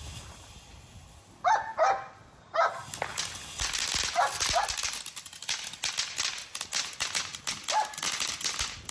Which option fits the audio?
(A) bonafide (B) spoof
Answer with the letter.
A